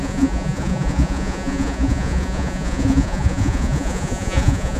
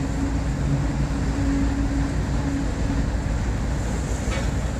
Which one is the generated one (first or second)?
first